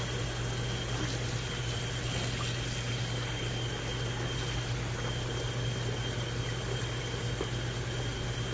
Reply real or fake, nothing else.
real